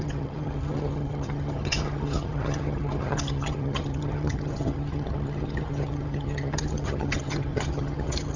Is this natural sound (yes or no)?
no